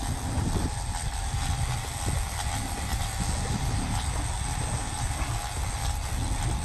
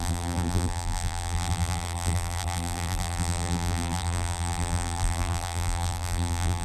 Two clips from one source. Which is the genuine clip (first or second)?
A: first